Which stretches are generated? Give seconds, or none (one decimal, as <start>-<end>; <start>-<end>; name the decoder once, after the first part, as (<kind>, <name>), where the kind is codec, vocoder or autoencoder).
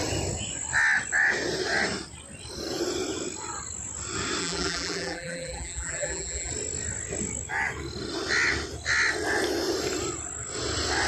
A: 4.4-6.5 (vocoder, BigVGAN v2)